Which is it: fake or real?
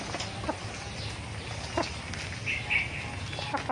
real